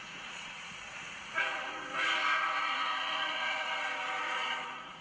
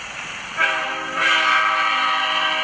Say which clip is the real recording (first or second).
second